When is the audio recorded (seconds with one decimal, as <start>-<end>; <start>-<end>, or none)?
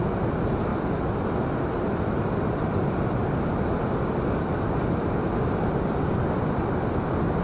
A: 0.0-7.4